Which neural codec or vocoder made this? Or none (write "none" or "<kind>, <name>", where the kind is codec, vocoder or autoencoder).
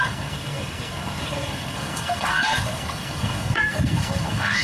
codec, SNAC